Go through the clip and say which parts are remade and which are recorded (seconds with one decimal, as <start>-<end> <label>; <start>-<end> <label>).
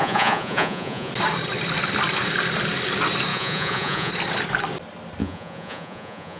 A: 0.0-1.1 remade; 1.1-3.3 recorded; 3.3-4.1 remade; 4.1-5.2 recorded; 5.2-6.4 remade